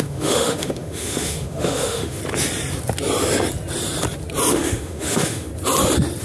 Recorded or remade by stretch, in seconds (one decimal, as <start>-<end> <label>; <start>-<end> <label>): 0.0-2.2 remade; 2.2-4.5 recorded; 4.5-5.5 remade; 5.5-6.2 recorded